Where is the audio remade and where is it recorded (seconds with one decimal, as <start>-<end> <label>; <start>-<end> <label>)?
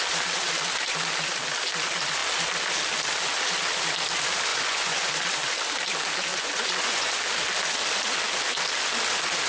0.0-4.5 recorded; 4.5-5.1 remade; 5.1-6.3 recorded; 6.3-7.2 remade; 7.2-9.5 recorded